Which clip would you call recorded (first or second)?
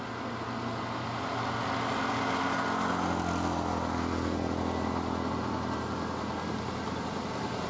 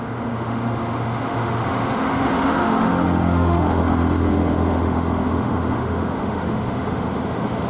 first